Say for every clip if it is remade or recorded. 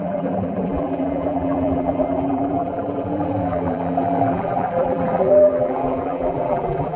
remade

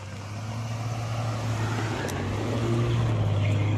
recorded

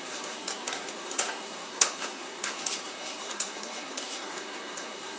remade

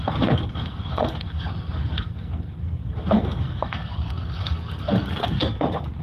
remade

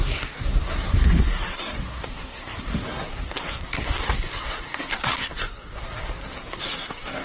remade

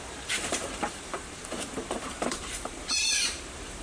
remade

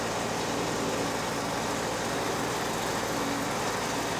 recorded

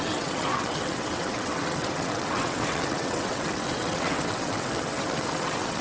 remade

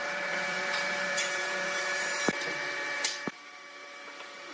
remade